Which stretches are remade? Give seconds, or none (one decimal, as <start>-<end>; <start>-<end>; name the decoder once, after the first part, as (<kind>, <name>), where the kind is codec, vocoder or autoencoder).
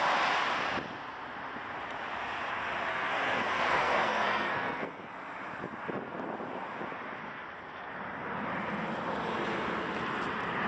2.9-5.1 (codec, SNAC)